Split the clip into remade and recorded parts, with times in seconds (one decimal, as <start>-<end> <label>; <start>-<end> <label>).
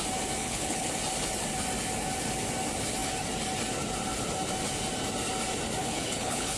0.0-0.4 recorded; 0.4-0.9 remade; 0.9-5.8 recorded; 5.8-6.6 remade